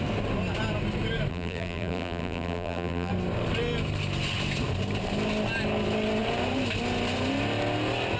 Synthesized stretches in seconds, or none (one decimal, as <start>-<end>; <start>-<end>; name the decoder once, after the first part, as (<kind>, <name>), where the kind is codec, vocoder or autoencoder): 1.3-3.1 (vocoder, BigVGAN v2)